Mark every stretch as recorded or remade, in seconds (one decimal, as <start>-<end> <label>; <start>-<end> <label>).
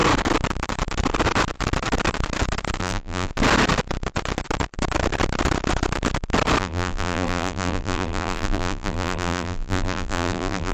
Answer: 0.0-2.8 recorded; 2.8-3.3 remade; 3.3-6.6 recorded; 6.6-10.7 remade